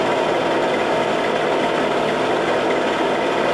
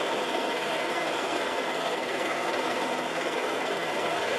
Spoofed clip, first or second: second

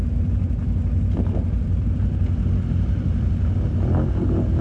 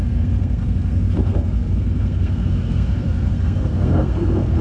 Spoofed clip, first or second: second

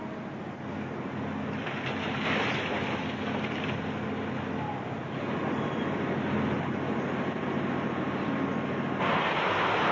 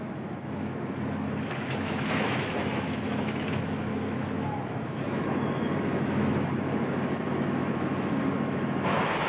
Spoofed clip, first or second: second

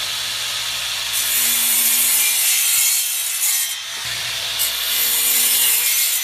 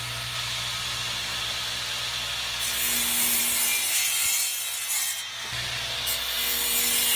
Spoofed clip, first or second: first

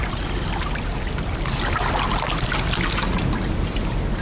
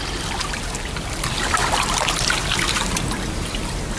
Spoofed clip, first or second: second